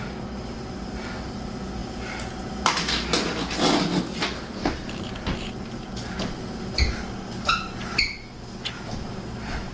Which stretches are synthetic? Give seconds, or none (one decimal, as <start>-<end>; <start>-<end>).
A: none